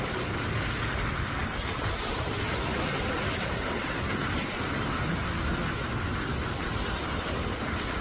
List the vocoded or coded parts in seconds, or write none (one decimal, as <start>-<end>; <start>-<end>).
none